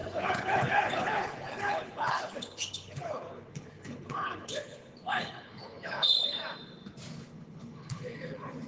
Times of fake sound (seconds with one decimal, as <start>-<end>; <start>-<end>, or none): 0.0-6.4; 7.2-8.7